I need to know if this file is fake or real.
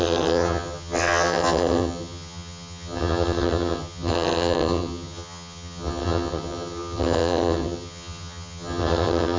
fake